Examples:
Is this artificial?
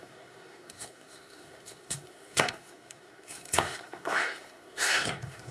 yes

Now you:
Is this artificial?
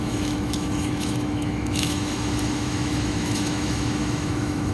yes